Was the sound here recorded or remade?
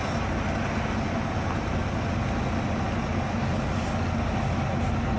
recorded